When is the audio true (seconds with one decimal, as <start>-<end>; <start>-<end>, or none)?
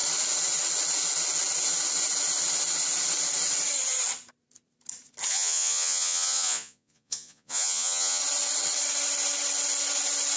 0.0-5.3; 8.2-10.4